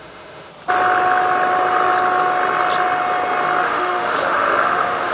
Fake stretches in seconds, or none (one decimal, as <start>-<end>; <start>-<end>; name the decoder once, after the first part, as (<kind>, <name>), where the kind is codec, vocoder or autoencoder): 0.0-0.5 (autoencoder, DAC-VAE); 3.6-5.1